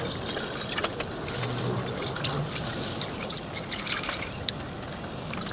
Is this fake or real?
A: real